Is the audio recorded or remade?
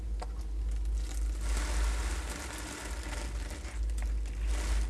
recorded